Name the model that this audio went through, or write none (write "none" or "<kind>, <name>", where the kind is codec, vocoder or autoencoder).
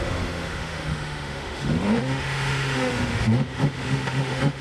autoencoder, DAC-VAE